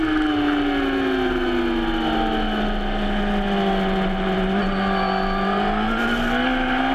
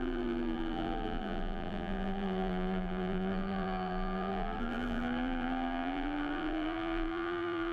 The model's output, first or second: second